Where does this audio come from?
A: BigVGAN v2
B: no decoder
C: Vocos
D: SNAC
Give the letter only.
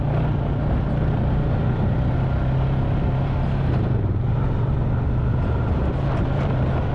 B